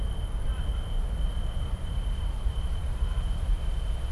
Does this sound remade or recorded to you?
recorded